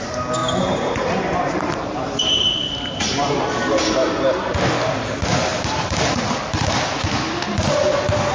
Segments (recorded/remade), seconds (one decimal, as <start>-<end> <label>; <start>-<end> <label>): 0.0-0.4 recorded; 0.4-2.6 remade; 2.6-3.2 recorded; 3.2-3.8 remade; 3.8-5.5 recorded; 5.5-7.0 remade; 7.0-8.3 recorded